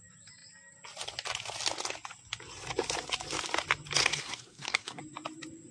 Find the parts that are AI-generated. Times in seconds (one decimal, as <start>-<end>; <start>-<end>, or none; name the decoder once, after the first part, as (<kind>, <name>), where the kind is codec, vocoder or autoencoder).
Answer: 4.0-5.0 (codec, SNAC)